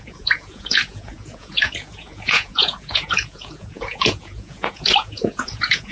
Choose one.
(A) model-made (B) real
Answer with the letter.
A